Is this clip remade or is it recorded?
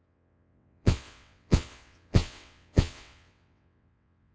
remade